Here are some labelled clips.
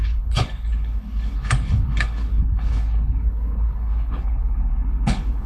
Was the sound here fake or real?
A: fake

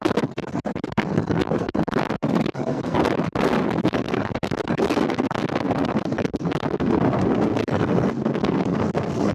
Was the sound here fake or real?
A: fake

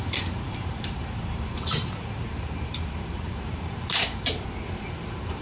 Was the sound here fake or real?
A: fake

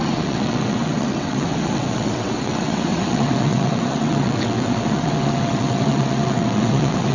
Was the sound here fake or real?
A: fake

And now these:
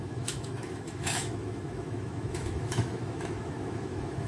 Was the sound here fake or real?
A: fake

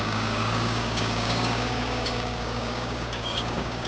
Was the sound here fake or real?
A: fake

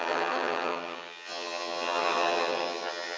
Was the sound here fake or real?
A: fake